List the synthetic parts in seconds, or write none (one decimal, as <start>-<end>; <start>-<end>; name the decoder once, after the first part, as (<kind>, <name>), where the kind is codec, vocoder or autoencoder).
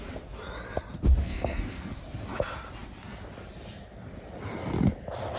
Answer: 1.2-2.0 (codec, SNAC)